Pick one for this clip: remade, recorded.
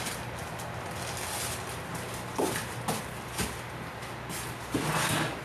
recorded